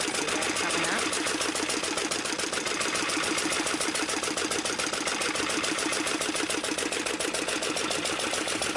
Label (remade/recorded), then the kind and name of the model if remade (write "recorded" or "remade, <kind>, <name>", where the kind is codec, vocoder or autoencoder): recorded